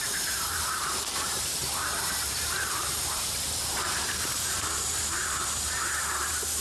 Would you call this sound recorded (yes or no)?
no